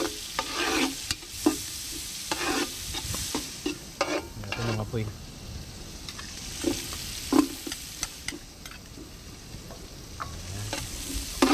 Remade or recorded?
recorded